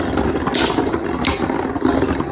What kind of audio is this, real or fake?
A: real